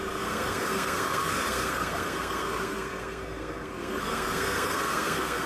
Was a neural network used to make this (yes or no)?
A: yes